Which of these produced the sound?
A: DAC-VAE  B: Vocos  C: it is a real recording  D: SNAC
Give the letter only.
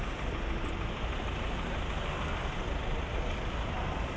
C